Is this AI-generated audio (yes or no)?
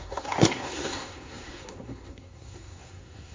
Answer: yes